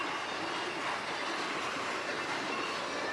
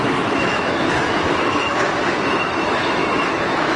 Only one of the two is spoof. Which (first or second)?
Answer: second